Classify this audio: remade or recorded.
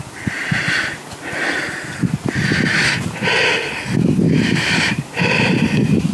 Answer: recorded